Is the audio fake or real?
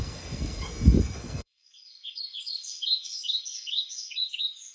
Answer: fake